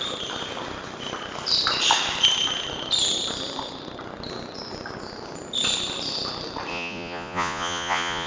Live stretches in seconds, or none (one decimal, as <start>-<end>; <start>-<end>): 0.0-6.7

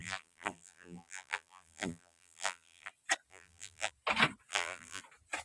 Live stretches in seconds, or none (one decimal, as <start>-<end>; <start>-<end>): 2.9-3.3; 3.9-4.5; 5.0-5.4

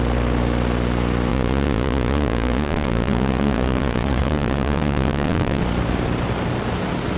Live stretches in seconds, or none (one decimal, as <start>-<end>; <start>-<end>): 0.0-1.3; 5.6-7.2

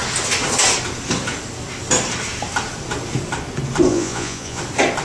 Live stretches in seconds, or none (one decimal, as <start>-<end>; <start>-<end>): 0.0-3.9; 4.6-5.0

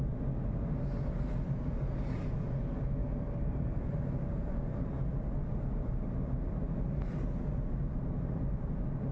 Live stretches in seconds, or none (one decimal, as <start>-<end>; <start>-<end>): 0.0-3.0; 4.5-9.1

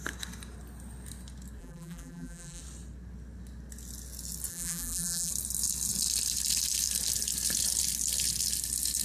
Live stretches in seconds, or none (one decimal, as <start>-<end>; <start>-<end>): 0.0-1.6; 2.6-4.5; 5.3-9.0